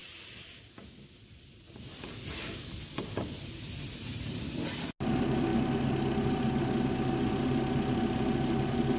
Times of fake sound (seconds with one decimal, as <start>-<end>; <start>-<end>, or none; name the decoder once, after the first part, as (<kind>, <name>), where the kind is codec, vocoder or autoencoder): none